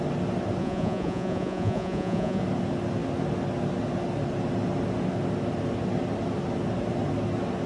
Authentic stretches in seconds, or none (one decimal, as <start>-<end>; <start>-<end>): 0.0-0.6; 2.4-7.7